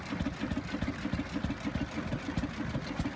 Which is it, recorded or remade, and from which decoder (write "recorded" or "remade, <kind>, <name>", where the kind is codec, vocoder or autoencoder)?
recorded